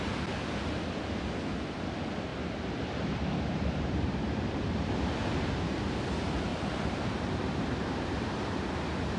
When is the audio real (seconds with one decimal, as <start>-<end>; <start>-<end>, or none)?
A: 0.0-2.3; 4.1-6.5; 8.4-9.2